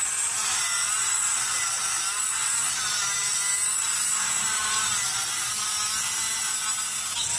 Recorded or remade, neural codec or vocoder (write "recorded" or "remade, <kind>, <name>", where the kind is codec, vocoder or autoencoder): recorded